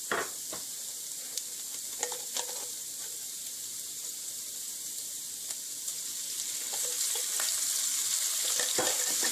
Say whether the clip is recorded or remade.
recorded